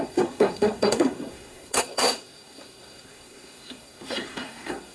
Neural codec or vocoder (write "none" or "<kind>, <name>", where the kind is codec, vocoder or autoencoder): codec, SNAC